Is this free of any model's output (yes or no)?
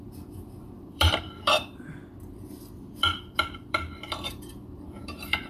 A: no